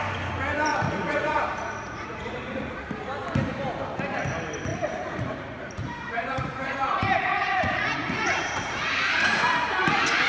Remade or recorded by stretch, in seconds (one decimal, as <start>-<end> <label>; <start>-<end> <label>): 0.0-0.7 recorded; 0.7-2.8 remade; 2.8-4.7 recorded; 4.7-9.4 remade; 9.4-10.3 recorded